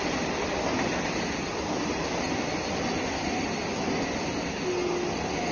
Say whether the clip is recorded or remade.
recorded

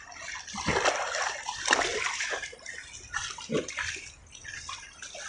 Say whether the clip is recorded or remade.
recorded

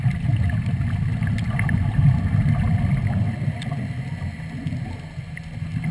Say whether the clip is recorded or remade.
recorded